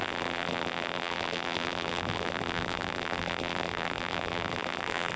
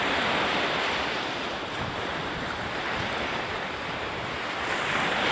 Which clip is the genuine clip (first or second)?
second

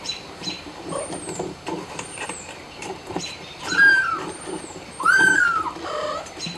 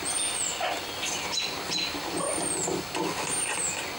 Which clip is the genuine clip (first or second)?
second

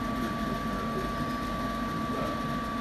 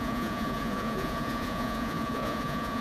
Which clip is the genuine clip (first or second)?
first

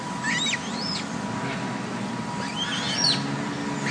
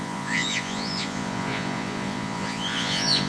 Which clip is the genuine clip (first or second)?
first